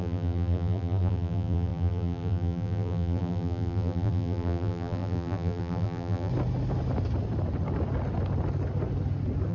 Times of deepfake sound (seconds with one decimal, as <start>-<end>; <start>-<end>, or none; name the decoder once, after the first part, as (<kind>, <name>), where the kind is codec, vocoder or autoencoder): 0.0-6.3 (vocoder, BigVGAN v2)